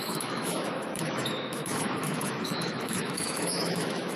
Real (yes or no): no